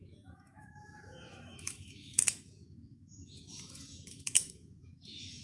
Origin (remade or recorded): remade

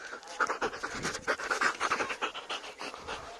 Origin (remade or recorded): recorded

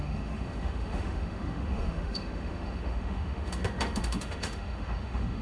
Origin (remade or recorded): remade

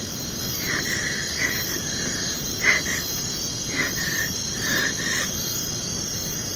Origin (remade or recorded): recorded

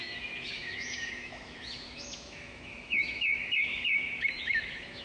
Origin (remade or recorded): remade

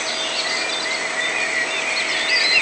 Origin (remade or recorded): recorded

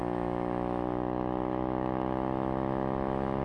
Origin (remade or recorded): remade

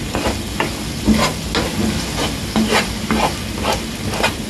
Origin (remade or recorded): recorded